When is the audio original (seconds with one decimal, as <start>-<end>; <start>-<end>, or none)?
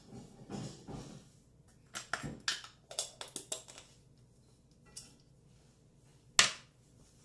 0.0-7.2